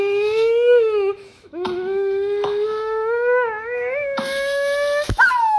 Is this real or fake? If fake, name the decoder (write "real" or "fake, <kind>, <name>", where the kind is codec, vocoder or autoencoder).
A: fake, autoencoder, DAC-VAE